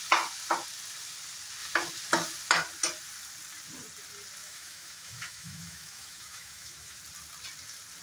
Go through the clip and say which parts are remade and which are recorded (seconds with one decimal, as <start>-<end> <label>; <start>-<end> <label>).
0.0-4.4 recorded; 4.4-7.0 remade; 7.0-8.0 recorded